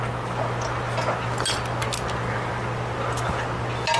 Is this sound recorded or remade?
recorded